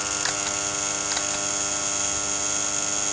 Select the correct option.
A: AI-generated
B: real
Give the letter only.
B